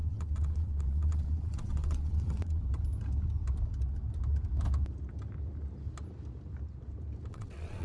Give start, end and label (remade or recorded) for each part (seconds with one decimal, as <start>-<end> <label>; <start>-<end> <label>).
0.0-2.6 remade; 2.6-7.3 recorded; 7.3-7.8 remade